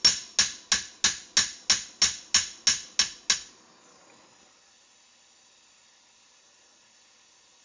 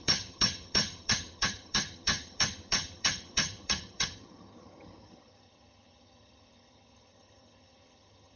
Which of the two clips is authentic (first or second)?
first